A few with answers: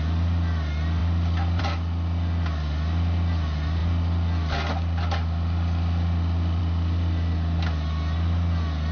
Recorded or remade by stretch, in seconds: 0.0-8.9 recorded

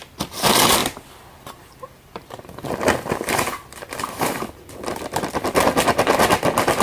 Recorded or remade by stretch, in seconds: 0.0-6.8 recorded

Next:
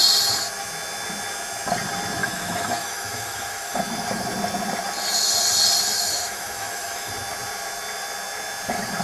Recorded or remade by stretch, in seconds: 0.0-2.2 recorded; 2.2-3.8 remade; 3.8-5.9 recorded; 5.9-7.1 remade; 7.1-9.0 recorded

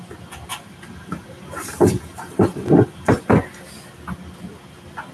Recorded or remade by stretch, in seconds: 0.0-0.5 recorded; 0.5-3.6 remade; 3.6-5.1 recorded

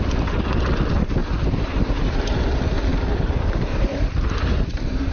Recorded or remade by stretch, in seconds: 0.0-1.2 recorded; 1.2-2.2 remade; 2.2-2.9 recorded; 2.9-5.1 remade

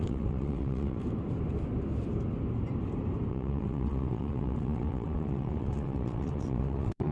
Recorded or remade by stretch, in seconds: 0.0-1.0 remade; 1.0-3.3 recorded; 3.3-7.1 remade

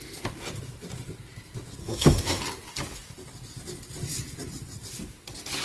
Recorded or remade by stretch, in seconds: 0.0-1.8 recorded; 1.8-2.4 remade; 2.4-5.6 recorded